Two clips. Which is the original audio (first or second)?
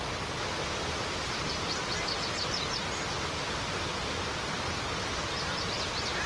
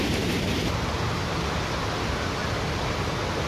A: first